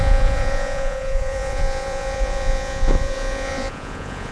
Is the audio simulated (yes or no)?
yes